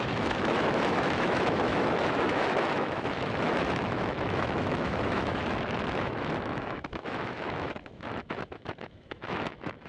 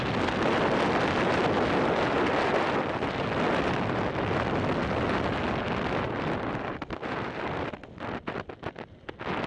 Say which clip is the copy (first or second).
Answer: first